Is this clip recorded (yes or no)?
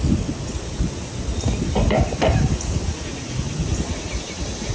yes